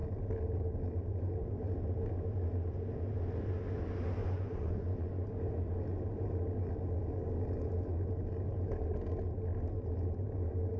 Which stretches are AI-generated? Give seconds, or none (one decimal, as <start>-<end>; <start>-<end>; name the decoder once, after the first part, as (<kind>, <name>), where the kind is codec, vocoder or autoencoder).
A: 4.2-5.4 (vocoder, Vocos)